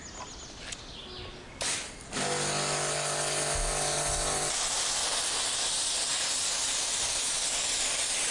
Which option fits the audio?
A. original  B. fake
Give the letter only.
A